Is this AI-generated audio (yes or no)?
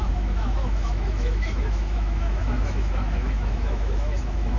yes